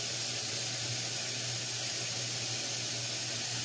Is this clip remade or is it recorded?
recorded